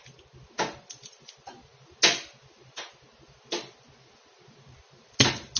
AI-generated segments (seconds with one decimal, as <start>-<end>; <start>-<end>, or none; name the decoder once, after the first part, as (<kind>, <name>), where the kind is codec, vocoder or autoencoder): none